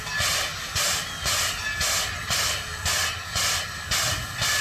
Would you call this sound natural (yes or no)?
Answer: yes